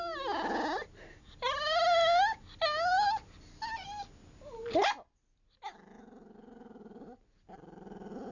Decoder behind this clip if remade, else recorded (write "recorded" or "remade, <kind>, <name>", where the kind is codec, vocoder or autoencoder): recorded